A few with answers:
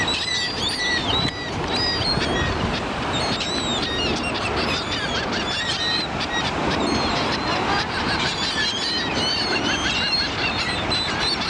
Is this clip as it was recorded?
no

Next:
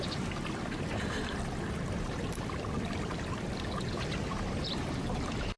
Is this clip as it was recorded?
no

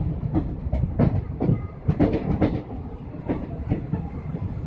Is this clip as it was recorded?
no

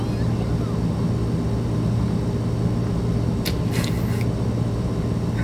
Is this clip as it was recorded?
yes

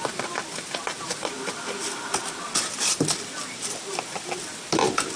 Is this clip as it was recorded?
yes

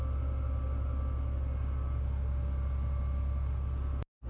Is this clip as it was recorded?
yes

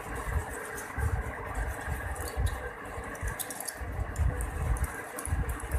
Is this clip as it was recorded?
yes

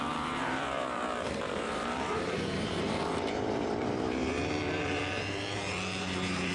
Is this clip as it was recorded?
no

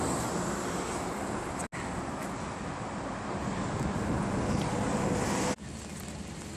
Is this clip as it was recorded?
yes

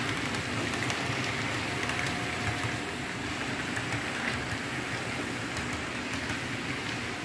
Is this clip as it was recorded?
yes